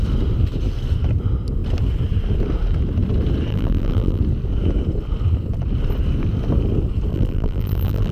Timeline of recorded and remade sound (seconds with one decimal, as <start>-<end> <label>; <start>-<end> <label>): 0.0-3.5 recorded; 3.5-4.2 remade; 4.2-7.1 recorded; 7.1-8.1 remade